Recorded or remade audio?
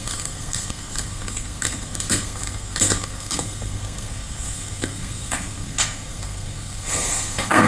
remade